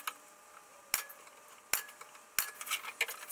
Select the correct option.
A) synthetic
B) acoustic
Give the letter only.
B